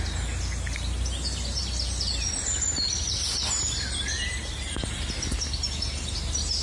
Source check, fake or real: real